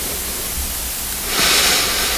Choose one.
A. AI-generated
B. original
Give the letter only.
B